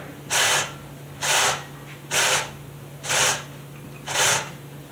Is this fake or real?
real